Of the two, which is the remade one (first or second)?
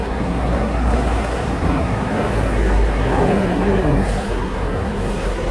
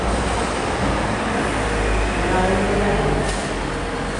first